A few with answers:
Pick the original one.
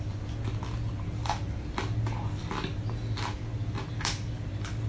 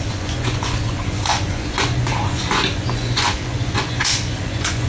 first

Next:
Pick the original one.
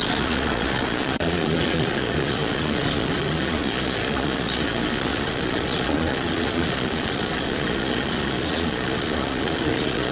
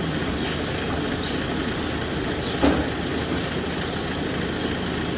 second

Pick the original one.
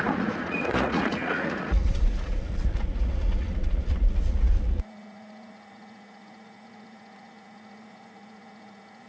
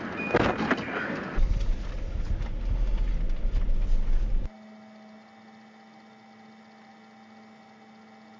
second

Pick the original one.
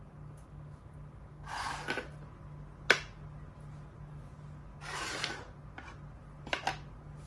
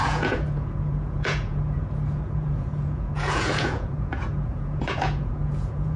first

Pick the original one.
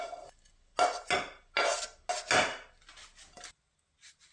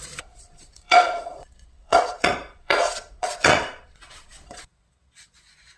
first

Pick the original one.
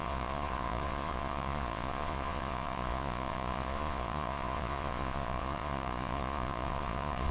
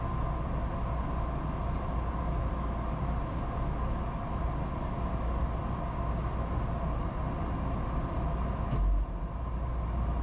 second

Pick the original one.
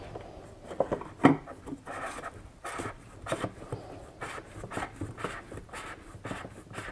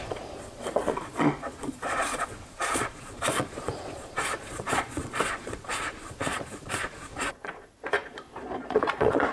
first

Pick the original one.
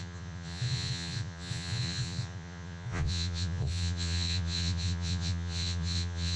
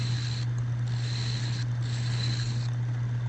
second